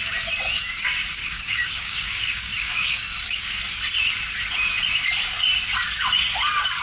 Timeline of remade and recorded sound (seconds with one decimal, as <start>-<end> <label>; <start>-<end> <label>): 0.0-1.2 recorded; 1.2-3.6 remade; 3.6-6.8 recorded